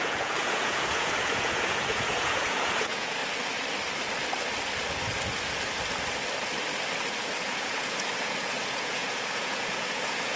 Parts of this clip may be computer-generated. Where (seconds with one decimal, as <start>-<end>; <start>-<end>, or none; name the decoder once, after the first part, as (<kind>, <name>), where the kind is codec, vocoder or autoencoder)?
0.0-3.2 (vocoder, Vocos); 7.2-10.4